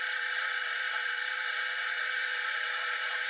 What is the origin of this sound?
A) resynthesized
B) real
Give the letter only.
A